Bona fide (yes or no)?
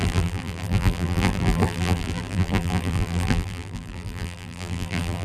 no